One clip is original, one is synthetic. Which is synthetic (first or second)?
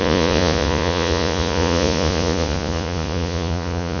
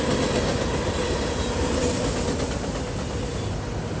first